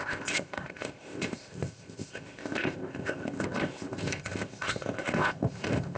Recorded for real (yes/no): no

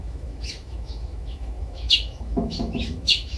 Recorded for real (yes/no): no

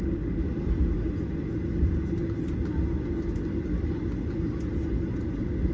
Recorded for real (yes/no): yes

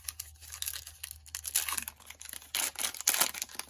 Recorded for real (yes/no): yes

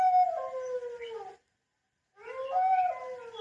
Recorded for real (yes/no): yes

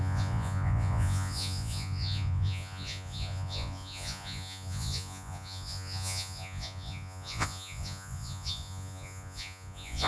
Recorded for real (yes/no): no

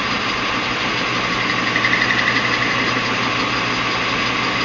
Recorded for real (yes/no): yes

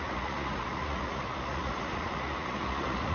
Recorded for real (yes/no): no